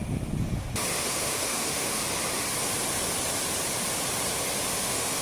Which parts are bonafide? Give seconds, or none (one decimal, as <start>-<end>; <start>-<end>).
0.0-1.0; 2.0-4.7